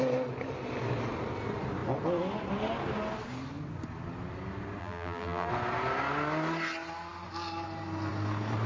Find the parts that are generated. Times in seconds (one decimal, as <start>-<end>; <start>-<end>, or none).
4.8-5.5